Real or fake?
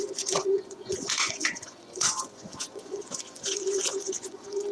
fake